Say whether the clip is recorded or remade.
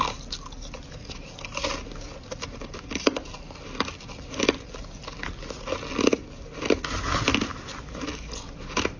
recorded